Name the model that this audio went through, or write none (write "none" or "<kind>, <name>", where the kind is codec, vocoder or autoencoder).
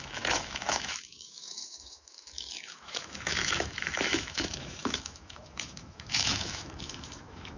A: autoencoder, DAC-VAE